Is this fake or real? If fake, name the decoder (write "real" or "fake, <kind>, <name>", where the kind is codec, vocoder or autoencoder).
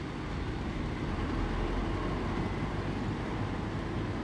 real